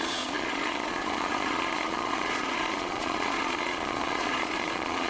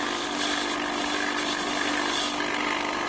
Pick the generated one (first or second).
first